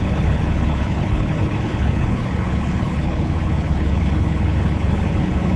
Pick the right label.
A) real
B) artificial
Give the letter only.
B